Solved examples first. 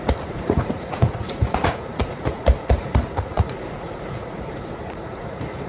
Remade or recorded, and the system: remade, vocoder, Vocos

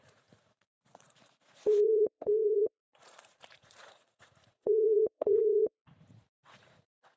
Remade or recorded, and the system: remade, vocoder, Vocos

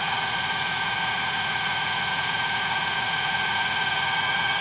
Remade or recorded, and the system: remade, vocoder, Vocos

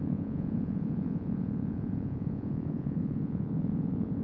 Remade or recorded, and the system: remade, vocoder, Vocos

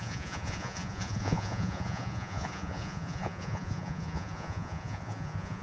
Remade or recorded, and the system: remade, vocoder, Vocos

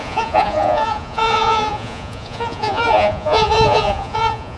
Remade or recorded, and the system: remade, vocoder, Vocos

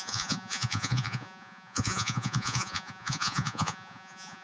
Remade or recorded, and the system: remade, vocoder, Vocos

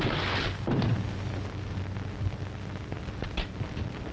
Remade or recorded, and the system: recorded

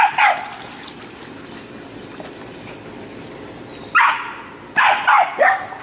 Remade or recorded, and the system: recorded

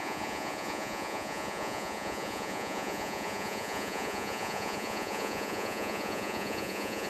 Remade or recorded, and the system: remade, vocoder, Vocos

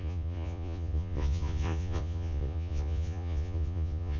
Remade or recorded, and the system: remade, vocoder, Vocos